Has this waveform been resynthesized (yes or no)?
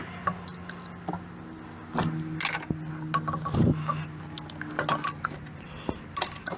no